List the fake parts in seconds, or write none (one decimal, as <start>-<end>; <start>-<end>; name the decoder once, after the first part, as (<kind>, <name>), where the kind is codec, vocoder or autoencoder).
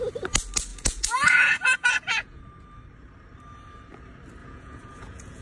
0.7-2.4 (vocoder, Vocos); 4.4-5.4